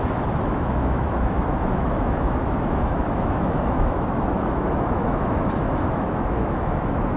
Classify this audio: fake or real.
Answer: fake